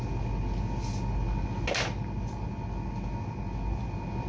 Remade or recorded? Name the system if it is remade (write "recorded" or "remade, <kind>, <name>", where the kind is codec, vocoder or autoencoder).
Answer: recorded